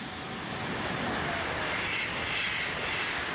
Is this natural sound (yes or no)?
yes